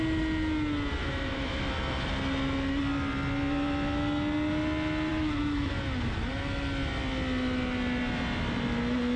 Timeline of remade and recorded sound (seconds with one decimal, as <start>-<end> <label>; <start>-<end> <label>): 0.0-1.0 recorded; 1.0-1.6 remade; 1.6-5.1 recorded; 5.1-5.7 remade; 5.7-9.2 recorded